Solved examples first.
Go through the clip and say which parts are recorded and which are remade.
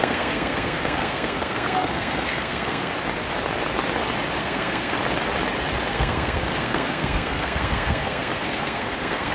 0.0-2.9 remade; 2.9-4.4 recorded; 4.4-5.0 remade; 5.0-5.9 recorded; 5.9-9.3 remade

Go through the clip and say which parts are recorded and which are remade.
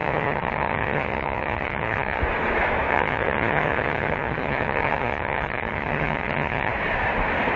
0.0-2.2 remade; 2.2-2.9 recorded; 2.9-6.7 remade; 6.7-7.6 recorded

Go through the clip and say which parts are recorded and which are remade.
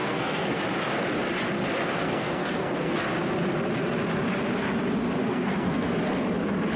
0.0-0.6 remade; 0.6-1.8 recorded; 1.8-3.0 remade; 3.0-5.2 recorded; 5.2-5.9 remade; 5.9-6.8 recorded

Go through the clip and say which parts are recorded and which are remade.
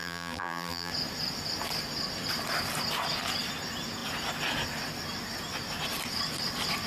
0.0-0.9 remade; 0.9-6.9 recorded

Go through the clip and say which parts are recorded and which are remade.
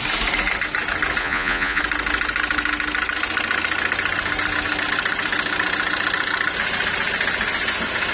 0.0-1.2 recorded; 1.2-1.8 remade; 1.8-8.1 recorded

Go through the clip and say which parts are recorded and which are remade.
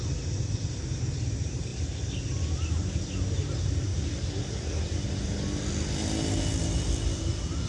0.0-3.9 recorded; 3.9-5.3 remade; 5.3-6.6 recorded; 6.6-7.3 remade; 7.3-7.7 recorded